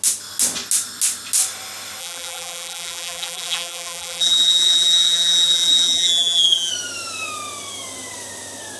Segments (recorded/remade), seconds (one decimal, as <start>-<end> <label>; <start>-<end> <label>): 0.0-2.0 recorded; 2.0-6.7 remade; 6.7-8.8 recorded